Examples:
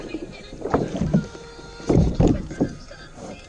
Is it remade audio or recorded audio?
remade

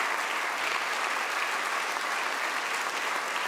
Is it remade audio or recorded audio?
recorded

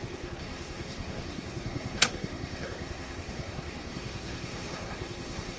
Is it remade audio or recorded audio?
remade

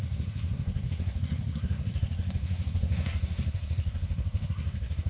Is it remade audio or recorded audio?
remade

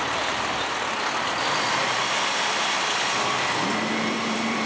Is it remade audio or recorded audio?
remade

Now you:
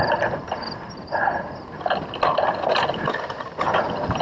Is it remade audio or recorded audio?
recorded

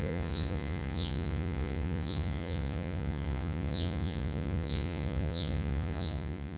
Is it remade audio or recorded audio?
remade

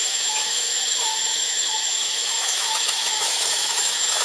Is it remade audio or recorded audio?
remade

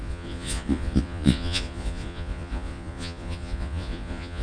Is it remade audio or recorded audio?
remade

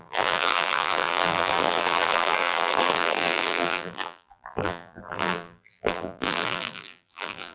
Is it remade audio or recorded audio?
remade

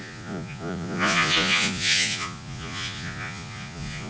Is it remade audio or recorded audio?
remade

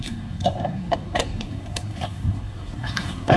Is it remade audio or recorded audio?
remade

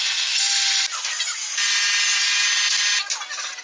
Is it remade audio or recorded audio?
recorded